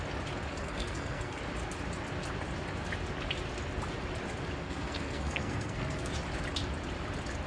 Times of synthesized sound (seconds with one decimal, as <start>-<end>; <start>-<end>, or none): 0.6-1.4; 4.6-6.1